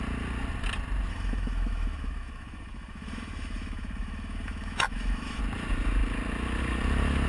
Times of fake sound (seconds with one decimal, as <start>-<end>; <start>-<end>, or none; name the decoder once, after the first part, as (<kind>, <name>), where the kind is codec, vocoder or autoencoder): 1.1-5.4 (autoencoder, DAC-VAE)